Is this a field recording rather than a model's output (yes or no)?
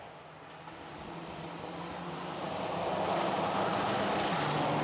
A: yes